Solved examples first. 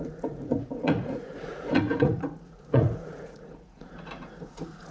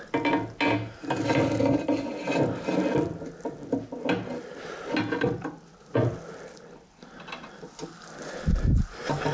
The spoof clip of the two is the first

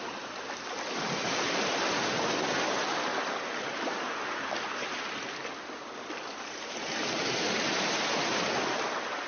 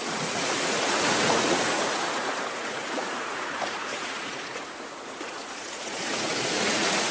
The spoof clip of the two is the second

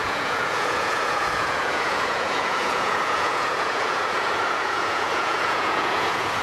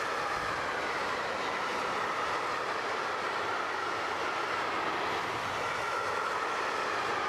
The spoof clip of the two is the first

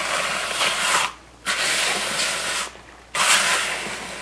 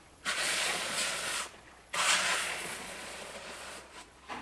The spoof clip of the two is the second